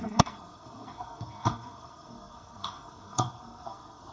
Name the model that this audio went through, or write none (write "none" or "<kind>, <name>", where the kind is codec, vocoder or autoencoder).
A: codec, SNAC